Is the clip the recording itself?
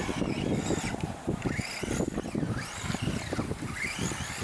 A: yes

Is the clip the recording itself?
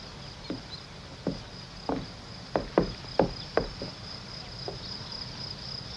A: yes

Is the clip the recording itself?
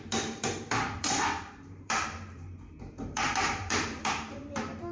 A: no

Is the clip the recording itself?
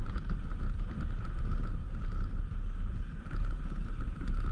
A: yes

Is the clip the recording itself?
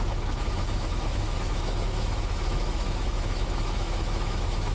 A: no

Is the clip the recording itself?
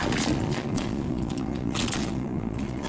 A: no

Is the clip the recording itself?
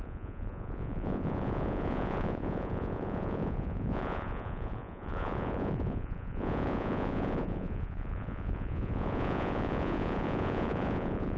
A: no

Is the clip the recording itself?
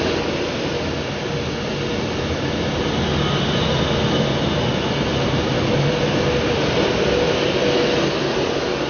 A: yes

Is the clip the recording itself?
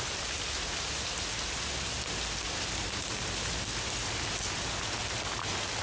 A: yes